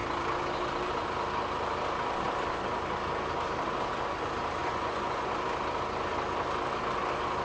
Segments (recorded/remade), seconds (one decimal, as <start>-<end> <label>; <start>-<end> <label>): 0.0-4.6 recorded; 4.6-5.3 remade; 5.3-7.4 recorded